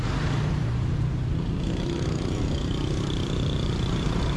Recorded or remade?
remade